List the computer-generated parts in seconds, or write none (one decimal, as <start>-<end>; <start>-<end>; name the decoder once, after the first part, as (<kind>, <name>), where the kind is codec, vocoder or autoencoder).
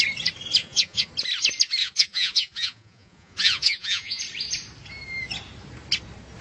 0.6-1.1 (vocoder, Vocos); 1.8-4.2